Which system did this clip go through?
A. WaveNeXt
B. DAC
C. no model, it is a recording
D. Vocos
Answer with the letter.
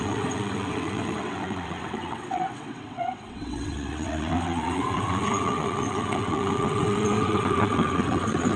A